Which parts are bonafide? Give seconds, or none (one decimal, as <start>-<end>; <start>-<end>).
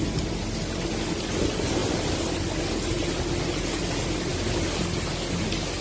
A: 0.0-1.8; 2.3-5.8